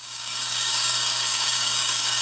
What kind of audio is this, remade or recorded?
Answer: remade